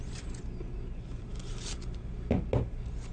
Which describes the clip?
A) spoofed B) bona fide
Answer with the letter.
B